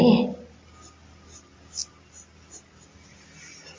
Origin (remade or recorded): recorded